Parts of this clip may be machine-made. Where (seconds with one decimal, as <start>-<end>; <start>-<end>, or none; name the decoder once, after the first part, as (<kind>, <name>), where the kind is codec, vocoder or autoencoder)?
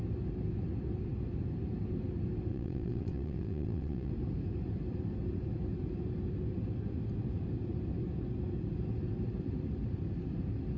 2.5-4.1 (vocoder, WaveNeXt)